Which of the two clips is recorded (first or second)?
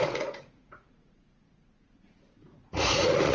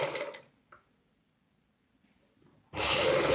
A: second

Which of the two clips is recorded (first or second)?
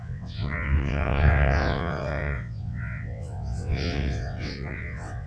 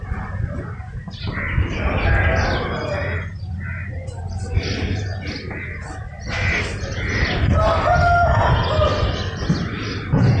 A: second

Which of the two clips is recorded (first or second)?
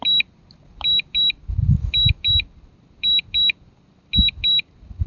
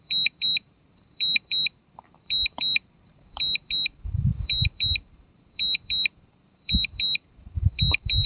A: first